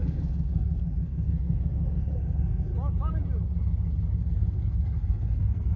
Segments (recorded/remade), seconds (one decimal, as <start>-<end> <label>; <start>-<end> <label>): 0.0-2.7 remade; 2.7-4.2 recorded; 4.2-5.8 remade

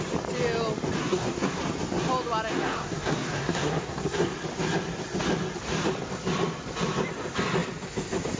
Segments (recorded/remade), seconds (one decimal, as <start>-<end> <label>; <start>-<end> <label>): 0.0-1.0 recorded; 1.0-1.6 remade; 1.6-2.5 recorded; 2.5-4.3 remade; 4.3-8.4 recorded

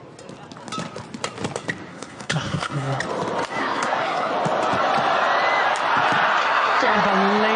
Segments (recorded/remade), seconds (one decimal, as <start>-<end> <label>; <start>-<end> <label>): 0.0-1.9 recorded; 1.9-3.0 remade; 3.0-3.6 recorded; 3.6-4.3 remade; 4.3-6.4 recorded; 6.4-7.0 remade; 7.0-7.6 recorded

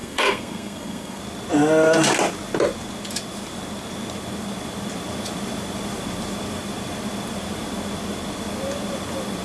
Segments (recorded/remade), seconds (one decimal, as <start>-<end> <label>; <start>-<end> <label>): 0.0-1.2 remade; 1.2-9.4 recorded

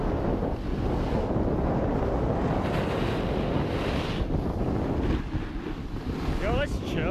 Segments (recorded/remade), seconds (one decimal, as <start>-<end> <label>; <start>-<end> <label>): 0.0-7.1 recorded

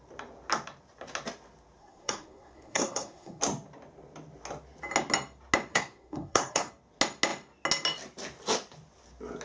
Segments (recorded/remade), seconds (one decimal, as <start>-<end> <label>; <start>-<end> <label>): 0.0-1.8 recorded; 1.8-3.4 remade; 3.4-5.7 recorded; 5.7-6.7 remade; 6.7-9.4 recorded